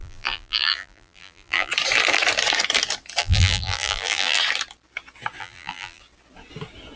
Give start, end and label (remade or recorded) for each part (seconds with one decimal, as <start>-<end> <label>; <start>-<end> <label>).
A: 0.0-1.7 remade; 1.7-3.2 recorded; 3.2-4.4 remade; 4.4-5.4 recorded; 5.4-6.0 remade; 6.0-7.0 recorded